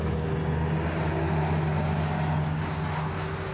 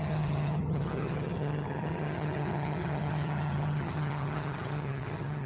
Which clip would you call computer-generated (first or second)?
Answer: second